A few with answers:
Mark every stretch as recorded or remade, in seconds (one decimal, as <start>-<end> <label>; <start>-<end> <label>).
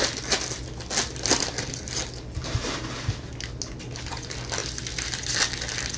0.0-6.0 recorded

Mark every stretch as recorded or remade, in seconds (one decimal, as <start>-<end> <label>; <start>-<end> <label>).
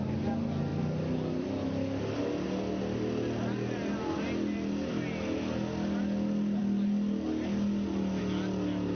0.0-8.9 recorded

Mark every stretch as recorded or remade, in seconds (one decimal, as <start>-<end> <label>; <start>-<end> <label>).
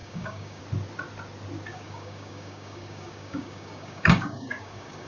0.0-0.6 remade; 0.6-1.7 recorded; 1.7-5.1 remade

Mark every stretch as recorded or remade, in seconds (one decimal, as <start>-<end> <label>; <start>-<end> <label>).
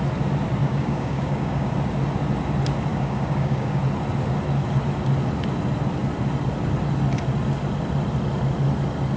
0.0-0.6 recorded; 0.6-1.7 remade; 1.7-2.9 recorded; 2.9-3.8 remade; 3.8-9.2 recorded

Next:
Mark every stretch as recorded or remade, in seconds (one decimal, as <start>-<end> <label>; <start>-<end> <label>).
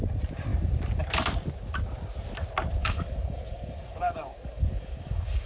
0.0-2.8 recorded; 2.8-5.5 remade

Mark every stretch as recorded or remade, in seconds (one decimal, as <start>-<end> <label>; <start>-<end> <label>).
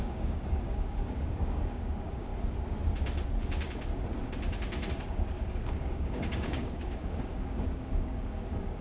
0.0-2.3 remade; 2.3-4.9 recorded; 4.9-8.8 remade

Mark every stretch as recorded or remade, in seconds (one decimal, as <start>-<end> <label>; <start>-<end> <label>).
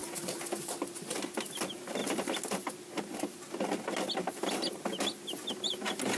0.0-6.2 recorded